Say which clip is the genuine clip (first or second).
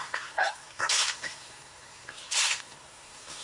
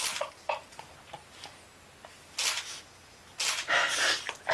second